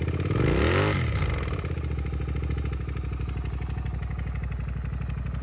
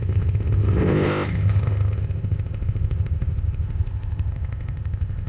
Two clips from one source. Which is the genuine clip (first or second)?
first